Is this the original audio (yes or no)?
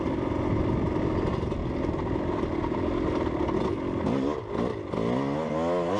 yes